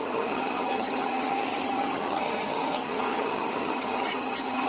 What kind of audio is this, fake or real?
fake